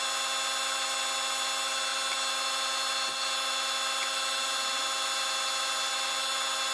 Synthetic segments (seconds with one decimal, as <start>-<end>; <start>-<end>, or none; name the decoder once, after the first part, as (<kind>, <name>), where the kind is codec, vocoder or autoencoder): none